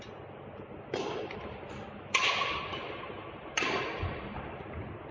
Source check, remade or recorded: recorded